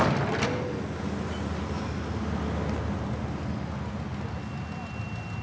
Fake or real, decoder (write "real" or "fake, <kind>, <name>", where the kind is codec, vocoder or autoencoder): real